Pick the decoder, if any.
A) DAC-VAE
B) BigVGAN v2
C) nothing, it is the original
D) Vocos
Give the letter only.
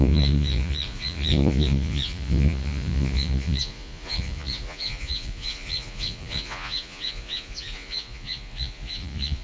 D